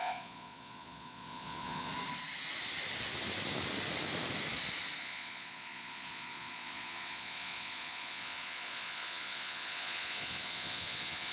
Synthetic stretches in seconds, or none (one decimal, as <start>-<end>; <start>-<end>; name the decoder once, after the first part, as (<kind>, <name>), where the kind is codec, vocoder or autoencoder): 0.0-1.9 (vocoder, Vocos); 5.0-11.3